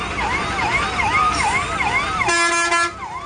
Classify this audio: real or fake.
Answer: real